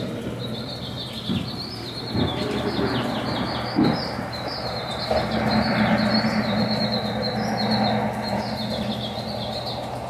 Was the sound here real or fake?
fake